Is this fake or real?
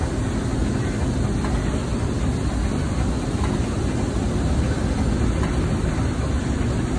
real